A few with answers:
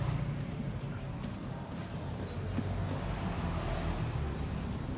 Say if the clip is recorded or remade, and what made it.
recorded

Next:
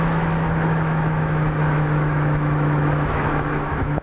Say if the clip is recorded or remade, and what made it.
remade, autoencoder, DAC-VAE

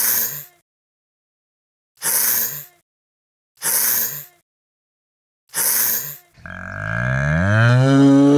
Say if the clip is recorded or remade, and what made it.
recorded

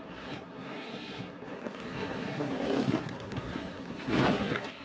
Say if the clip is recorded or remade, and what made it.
remade, codec, SNAC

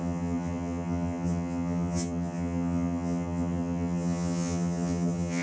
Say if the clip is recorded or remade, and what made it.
remade, vocoder, HiFi-GAN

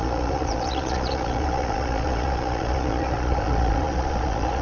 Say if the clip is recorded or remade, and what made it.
remade, vocoder, Vocos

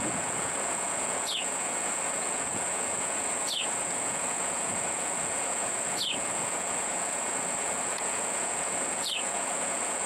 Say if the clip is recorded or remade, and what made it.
remade, vocoder, Vocos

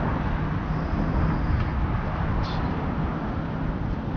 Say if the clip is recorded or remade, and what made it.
recorded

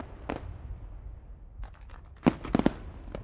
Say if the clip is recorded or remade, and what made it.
recorded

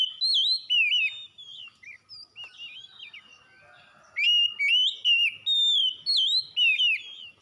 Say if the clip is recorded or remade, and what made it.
recorded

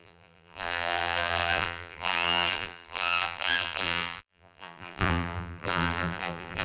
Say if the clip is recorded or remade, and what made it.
remade, vocoder, BigVGAN v2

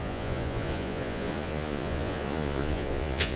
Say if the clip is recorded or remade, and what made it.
remade, vocoder, Vocos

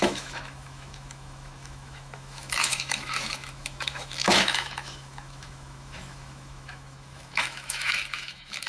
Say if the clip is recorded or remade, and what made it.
remade, autoencoder, DAC-VAE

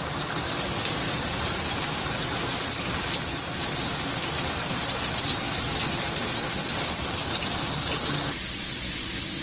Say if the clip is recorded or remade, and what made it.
recorded